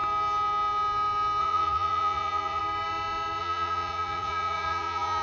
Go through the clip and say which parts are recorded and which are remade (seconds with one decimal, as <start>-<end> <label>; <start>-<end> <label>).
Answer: 0.0-1.4 recorded; 1.4-2.6 remade; 2.6-3.4 recorded; 3.4-5.2 remade